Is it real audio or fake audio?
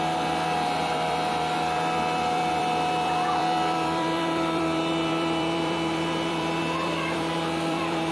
fake